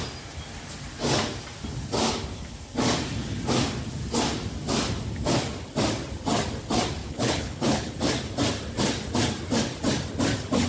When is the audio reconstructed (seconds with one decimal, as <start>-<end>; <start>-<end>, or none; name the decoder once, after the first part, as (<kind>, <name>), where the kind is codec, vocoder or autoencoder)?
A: 7.0-7.9 (codec, HILCodec)